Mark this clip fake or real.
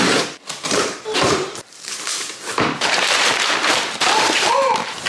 fake